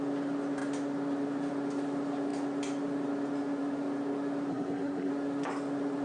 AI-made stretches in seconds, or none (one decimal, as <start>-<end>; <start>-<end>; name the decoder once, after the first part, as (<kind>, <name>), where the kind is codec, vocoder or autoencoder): 4.5-5.1 (codec, SNAC)